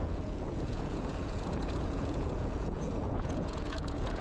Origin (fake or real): fake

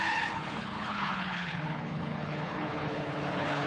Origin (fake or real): fake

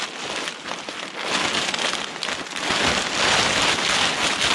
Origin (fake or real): real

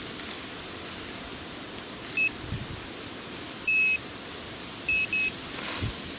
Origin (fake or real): real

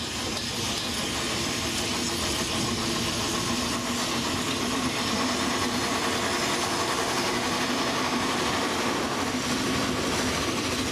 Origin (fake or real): real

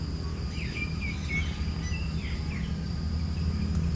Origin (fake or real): real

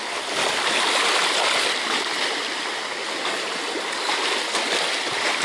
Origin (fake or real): real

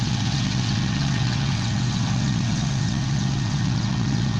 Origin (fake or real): fake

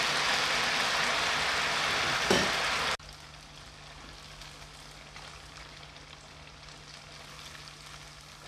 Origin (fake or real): real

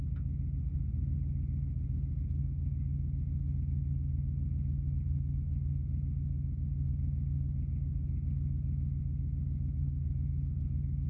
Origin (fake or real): real